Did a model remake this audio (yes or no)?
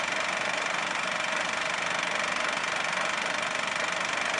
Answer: no